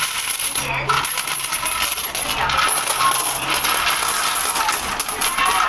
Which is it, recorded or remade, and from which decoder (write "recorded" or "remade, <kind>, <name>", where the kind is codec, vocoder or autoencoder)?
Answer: recorded